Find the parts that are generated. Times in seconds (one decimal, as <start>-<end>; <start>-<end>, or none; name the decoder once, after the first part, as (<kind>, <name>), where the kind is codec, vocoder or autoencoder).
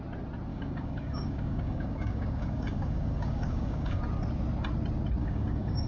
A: 0.5-4.0 (codec, DAC); 5.2-5.9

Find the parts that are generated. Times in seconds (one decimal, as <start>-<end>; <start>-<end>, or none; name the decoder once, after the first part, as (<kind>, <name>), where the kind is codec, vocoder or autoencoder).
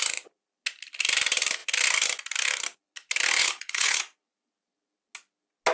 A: 3.4-4.0 (codec, HILCodec)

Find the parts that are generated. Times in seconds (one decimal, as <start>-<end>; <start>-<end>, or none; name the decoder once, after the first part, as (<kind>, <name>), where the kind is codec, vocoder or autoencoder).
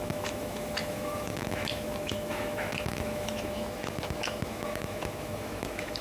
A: 0.0-6.0 (autoencoder, DAC-VAE)